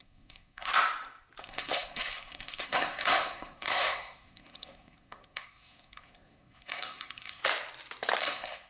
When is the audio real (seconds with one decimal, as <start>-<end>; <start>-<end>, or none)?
0.7-1.4; 7.4-8.2